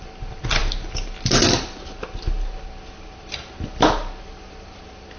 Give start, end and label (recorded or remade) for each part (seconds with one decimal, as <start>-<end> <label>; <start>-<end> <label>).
0.0-5.2 recorded